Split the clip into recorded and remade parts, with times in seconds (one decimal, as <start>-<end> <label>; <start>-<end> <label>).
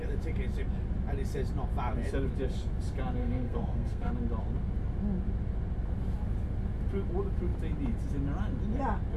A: 0.0-3.2 recorded; 3.2-4.1 remade; 4.1-9.2 recorded